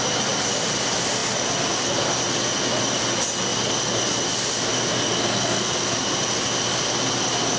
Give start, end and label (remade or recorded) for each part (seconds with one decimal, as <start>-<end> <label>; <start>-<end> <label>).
0.0-5.2 recorded; 5.2-5.7 remade; 5.7-7.6 recorded